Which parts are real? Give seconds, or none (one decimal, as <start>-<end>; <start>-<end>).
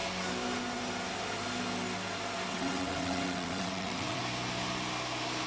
0.0-2.5; 4.2-5.5